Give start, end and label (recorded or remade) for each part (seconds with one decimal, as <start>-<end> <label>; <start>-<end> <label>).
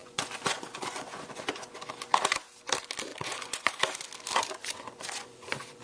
0.0-1.9 remade; 1.9-3.1 recorded; 3.1-3.8 remade; 3.8-4.6 recorded; 4.6-5.8 remade